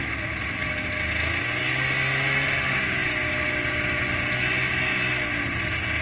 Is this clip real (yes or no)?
yes